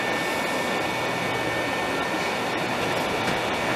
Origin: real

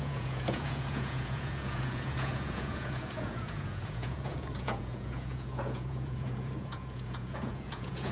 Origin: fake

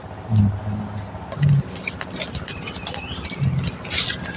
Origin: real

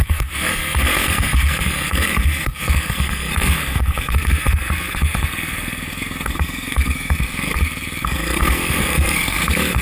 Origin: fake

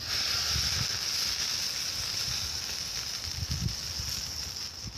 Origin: real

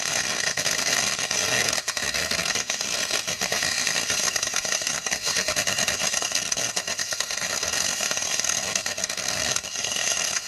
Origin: fake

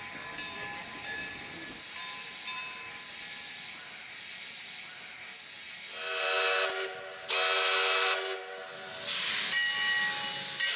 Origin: real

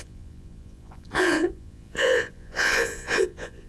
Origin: fake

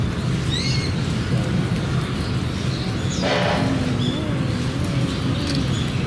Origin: real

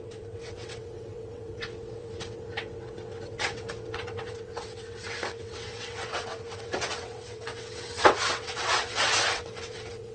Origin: fake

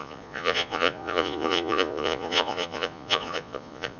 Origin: fake